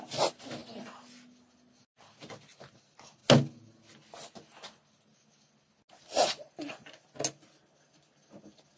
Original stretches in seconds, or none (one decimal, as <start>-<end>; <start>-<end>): 0.0-8.8

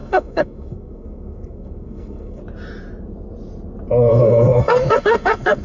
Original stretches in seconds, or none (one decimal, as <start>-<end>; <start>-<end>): 2.4-4.1

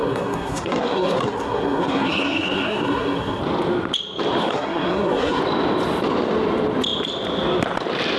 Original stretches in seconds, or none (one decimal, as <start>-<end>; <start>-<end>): 3.4-4.4; 5.4-8.2

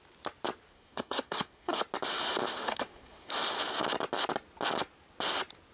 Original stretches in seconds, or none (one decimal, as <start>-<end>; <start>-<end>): 0.0-0.7; 1.8-2.7; 3.3-5.7

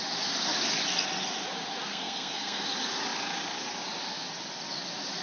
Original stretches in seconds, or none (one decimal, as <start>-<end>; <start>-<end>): 0.0-1.9; 2.6-5.2

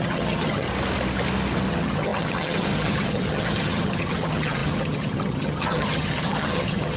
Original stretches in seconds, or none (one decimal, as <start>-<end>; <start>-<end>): 0.7-1.7